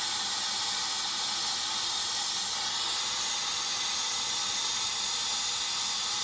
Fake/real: real